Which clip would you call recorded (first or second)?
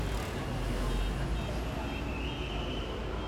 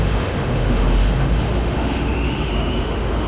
first